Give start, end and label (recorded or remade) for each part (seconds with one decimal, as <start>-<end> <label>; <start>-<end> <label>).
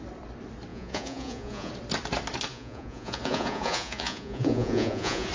0.0-0.7 recorded; 0.7-1.7 remade; 1.7-2.5 recorded; 2.5-5.3 remade